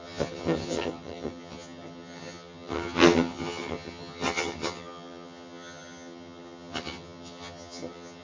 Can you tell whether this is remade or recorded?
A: remade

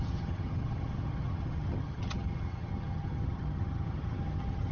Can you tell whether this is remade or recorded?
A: remade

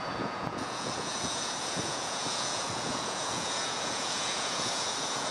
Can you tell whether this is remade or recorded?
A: remade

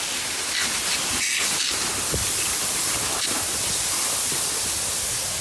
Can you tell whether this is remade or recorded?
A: recorded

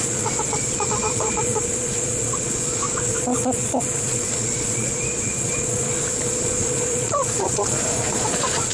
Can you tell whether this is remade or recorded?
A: remade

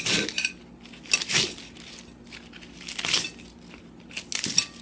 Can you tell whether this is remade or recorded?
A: recorded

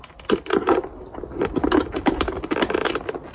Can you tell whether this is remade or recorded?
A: recorded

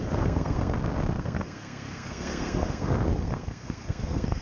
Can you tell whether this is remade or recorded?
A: remade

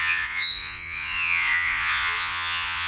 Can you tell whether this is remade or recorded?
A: remade